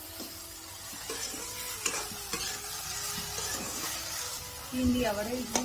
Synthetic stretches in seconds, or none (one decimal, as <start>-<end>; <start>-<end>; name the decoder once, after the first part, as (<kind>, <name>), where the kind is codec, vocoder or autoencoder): 3.5-4.3 (codec, DAC)